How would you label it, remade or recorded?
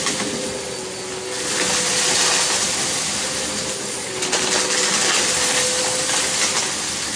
recorded